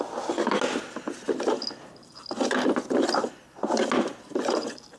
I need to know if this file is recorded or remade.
recorded